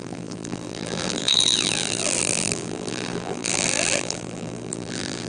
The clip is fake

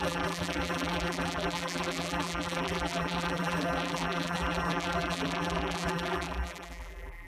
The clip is fake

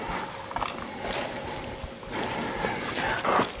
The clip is real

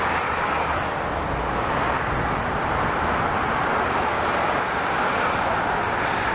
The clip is real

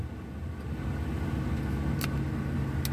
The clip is real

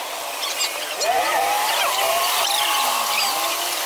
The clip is fake